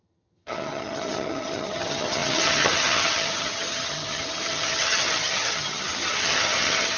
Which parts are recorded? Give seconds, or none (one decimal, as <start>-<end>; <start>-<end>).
none

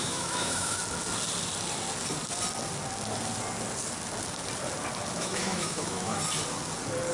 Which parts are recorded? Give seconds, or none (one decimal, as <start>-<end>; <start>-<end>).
0.8-5.1; 6.2-7.1